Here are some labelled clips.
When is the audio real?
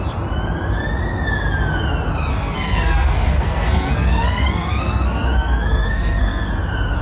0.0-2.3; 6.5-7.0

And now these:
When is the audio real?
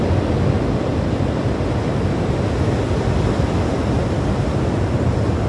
0.0-5.5